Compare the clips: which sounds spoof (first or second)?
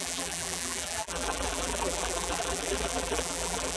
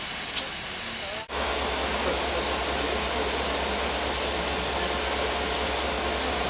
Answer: first